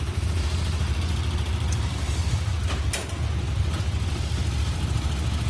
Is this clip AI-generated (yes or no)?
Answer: no